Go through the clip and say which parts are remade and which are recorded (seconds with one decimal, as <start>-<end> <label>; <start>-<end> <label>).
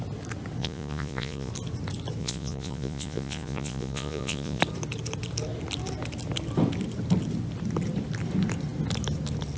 0.0-0.6 recorded; 0.6-1.5 remade; 1.5-2.2 recorded; 2.2-4.6 remade; 4.6-9.6 recorded